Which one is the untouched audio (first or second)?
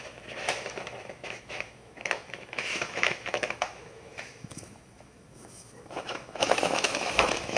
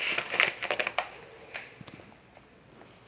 second